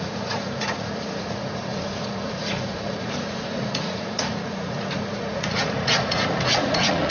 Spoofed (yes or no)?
yes